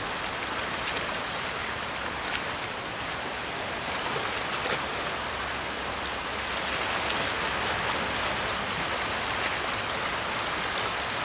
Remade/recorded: recorded